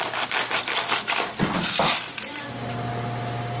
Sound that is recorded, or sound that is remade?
recorded